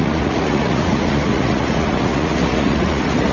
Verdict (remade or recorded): remade